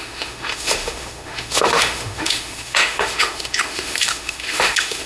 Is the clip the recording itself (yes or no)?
no